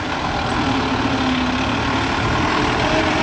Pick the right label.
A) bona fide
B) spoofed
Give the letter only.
A